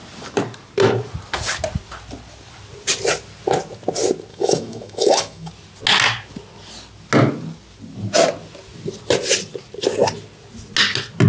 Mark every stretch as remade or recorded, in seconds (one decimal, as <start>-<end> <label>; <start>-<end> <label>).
0.0-4.3 recorded; 4.3-5.5 remade; 5.5-11.3 recorded